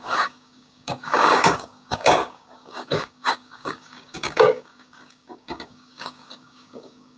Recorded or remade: remade